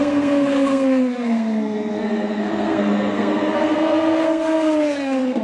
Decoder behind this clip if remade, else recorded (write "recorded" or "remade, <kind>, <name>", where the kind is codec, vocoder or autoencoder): remade, codec, SNAC